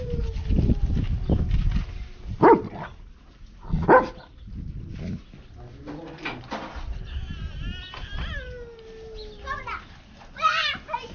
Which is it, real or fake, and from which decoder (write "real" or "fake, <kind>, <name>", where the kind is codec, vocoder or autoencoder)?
real